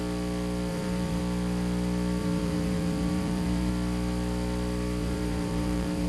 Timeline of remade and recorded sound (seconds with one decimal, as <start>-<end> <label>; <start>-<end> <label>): 0.0-0.7 recorded; 0.7-1.2 remade; 1.2-2.2 recorded; 2.2-3.7 remade; 3.7-5.0 recorded; 5.0-6.1 remade